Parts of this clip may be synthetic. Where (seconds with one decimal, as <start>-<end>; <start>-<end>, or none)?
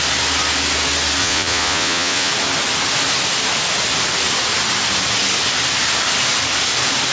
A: 1.2-2.3